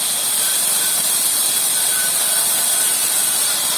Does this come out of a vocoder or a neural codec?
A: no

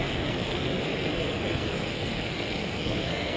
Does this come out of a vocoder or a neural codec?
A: yes